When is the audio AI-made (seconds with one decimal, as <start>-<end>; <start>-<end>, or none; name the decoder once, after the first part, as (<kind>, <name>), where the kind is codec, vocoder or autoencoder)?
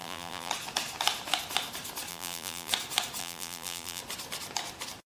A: 0.0-0.5 (vocoder, BigVGAN v2); 2.1-2.7; 3.2-4.0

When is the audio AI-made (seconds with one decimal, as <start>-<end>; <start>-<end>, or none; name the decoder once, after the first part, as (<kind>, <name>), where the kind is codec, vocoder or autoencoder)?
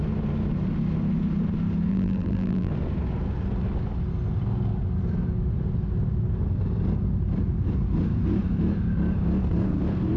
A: 1.9-2.7 (vocoder, BigVGAN v2)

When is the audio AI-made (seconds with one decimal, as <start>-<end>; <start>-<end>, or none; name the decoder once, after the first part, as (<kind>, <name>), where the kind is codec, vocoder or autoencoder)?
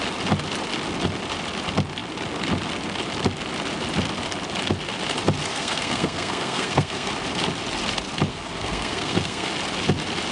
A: 5.5-7.1 (codec, SNAC); 8.3-9.5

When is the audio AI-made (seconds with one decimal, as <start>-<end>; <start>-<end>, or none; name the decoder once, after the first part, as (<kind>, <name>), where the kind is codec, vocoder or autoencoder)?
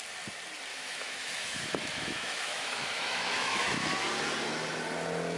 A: 0.7-3.9 (autoencoder, DAC-VAE)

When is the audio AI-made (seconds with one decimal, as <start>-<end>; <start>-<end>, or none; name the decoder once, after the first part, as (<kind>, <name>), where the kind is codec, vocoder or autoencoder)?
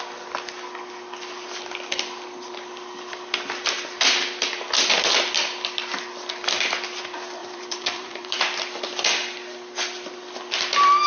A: 7.4-8.4 (vocoder, BigVGAN v2)